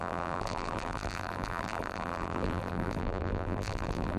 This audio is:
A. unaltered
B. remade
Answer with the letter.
B